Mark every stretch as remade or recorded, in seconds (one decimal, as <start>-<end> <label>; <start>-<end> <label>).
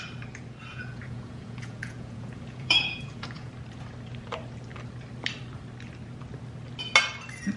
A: 0.0-0.7 recorded; 0.7-3.5 remade; 3.5-7.6 recorded